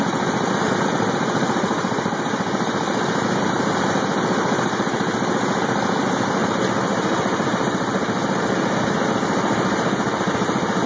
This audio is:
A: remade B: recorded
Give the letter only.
B